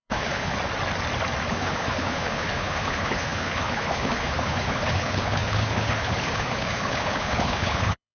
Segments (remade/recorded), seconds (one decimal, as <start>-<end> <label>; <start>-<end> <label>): 0.0-0.5 remade; 0.5-1.5 recorded; 1.5-8.1 remade